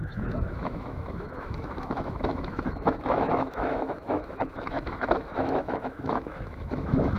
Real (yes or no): no